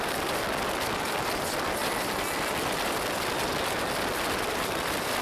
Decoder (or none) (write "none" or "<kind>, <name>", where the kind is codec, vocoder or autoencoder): none